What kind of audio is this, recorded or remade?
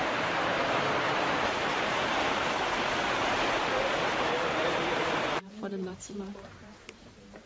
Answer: remade